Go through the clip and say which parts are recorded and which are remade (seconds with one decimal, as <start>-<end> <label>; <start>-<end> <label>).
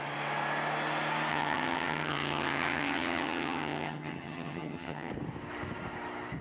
0.0-1.3 recorded; 1.3-5.1 remade; 5.1-6.4 recorded